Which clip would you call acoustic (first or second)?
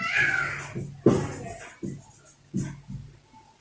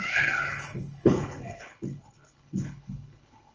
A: first